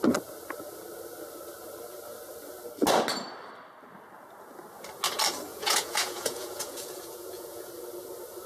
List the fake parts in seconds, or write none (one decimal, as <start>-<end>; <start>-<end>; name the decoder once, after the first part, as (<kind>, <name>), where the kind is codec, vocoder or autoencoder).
5.5-7.7 (vocoder, Vocos)